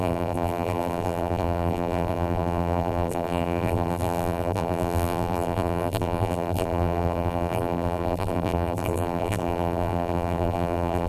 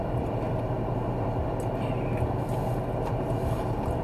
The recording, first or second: second